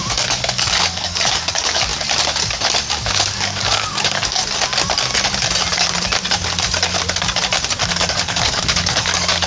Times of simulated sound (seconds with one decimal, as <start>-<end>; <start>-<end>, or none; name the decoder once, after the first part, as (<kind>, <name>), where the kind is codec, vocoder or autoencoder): 0.0-1.9 (codec, DAC); 2.9-4.4; 7.9-9.5